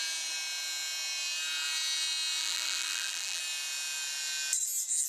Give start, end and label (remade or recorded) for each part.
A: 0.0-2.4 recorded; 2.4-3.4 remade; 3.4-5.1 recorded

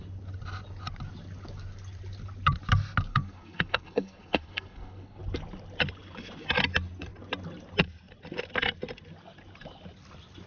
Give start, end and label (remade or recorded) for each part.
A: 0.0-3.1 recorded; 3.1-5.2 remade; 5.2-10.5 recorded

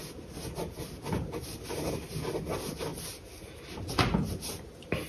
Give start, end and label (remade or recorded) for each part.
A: 0.0-5.1 recorded